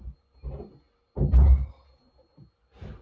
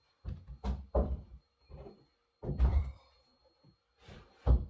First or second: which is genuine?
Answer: first